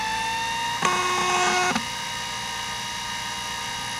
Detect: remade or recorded recorded